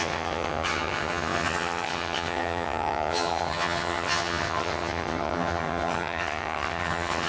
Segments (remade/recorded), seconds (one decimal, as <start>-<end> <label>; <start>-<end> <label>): 0.0-7.3 remade